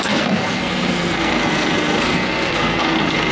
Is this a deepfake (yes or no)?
yes